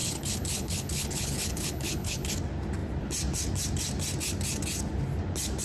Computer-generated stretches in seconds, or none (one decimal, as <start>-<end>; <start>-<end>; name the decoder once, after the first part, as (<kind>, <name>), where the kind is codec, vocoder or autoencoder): 0.0-2.3 (codec, HILCodec)